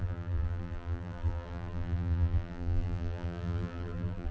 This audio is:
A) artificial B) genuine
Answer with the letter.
A